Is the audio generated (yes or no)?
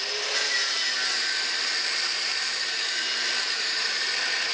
yes